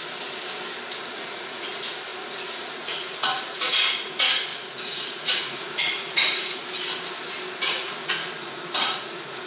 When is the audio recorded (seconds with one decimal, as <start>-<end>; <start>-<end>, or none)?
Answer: 0.0-1.0; 6.6-7.6